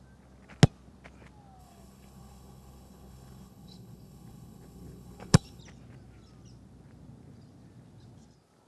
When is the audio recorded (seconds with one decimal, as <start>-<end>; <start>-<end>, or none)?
0.0-1.6; 5.6-8.7